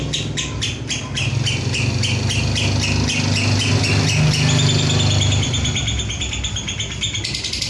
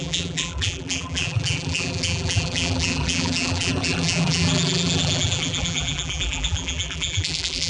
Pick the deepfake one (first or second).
second